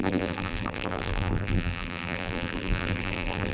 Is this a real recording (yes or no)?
no